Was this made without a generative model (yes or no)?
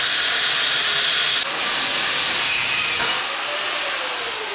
yes